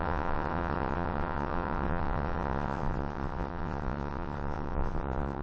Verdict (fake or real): fake